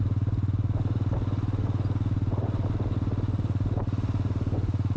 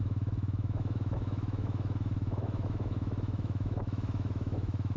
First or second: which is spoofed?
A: second